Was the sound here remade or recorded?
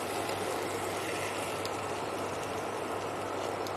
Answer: recorded